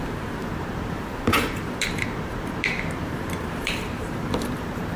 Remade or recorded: remade